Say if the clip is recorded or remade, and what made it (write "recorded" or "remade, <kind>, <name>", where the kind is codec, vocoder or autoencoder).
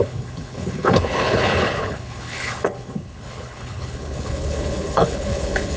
remade, codec, HILCodec